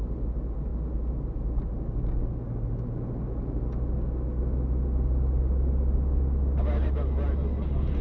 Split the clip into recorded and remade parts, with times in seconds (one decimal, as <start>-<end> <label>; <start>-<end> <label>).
0.0-8.0 recorded